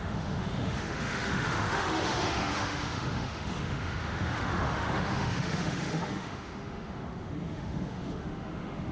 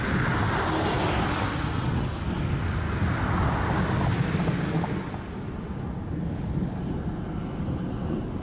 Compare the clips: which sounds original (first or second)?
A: second